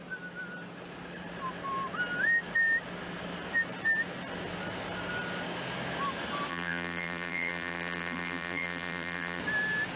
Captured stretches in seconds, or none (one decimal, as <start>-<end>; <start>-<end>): 0.0-6.5; 9.4-10.0